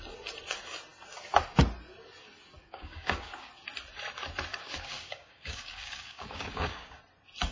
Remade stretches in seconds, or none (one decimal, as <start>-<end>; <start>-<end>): 2.6-3.5; 4.5-7.0